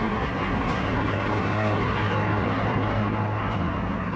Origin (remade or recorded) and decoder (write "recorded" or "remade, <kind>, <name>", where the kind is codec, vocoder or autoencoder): remade, codec, SNAC